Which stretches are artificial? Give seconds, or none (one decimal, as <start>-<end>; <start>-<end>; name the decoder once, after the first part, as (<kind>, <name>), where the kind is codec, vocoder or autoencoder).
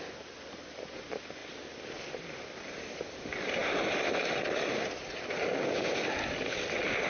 none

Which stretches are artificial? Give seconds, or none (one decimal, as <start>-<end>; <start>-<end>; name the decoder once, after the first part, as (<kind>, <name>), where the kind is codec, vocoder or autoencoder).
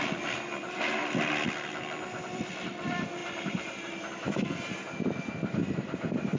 3.2-3.9 (vocoder, BigVGAN v2); 5.6-6.4